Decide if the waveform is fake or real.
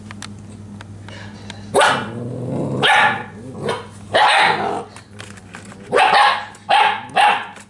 real